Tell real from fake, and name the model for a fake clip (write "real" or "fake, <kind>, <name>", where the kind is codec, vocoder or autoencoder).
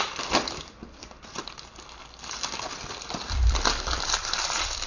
fake, vocoder, BigVGAN v2